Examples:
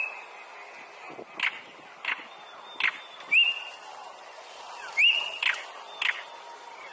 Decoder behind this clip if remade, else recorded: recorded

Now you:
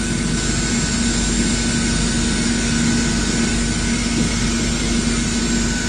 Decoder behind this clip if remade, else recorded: recorded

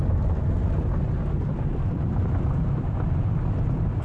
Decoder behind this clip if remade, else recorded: recorded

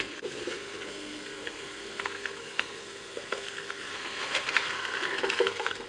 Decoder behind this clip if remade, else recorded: remade, codec, SNAC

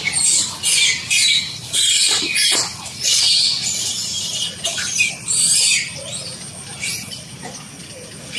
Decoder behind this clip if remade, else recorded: recorded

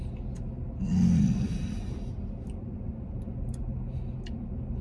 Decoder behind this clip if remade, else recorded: recorded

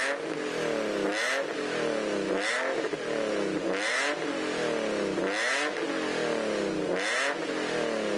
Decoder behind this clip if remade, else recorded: recorded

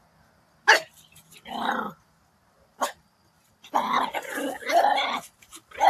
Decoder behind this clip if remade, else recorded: recorded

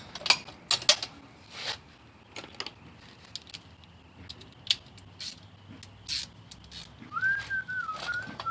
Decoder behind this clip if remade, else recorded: recorded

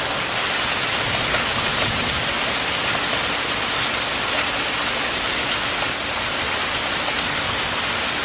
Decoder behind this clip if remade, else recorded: recorded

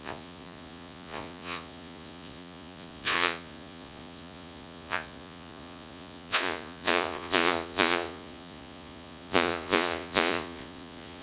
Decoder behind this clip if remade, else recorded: remade, vocoder, Vocos